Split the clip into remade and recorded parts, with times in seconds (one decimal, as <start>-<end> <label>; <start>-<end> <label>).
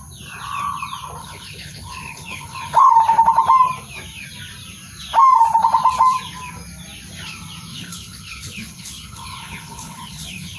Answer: 0.0-1.2 recorded; 1.2-2.9 remade; 2.9-7.7 recorded; 7.7-10.6 remade